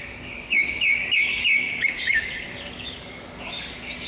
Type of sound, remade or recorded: remade